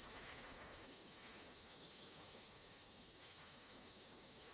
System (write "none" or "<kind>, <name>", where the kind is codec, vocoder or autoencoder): autoencoder, DAC-VAE